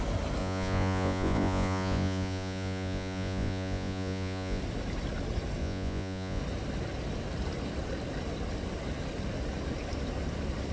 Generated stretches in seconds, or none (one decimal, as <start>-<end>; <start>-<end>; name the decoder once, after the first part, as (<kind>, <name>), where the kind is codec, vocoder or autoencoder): 0.4-4.6 (vocoder, Vocos); 5.6-6.4